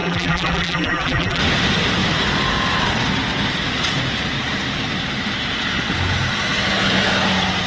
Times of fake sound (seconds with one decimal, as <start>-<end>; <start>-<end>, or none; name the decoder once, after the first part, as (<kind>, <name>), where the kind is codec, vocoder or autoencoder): 0.0-1.4 (vocoder, BigVGAN v2)